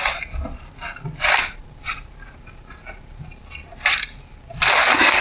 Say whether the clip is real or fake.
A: real